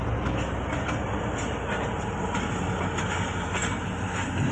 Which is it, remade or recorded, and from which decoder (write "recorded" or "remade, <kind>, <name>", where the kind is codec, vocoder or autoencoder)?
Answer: recorded